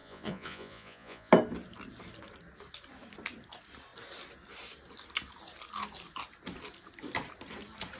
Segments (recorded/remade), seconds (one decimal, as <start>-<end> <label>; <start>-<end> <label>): 0.0-1.3 remade; 1.3-8.0 recorded